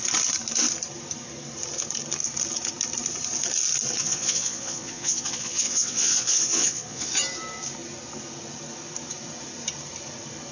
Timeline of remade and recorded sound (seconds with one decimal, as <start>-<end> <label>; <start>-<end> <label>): 0.0-4.0 recorded; 4.0-7.1 remade; 7.1-10.5 recorded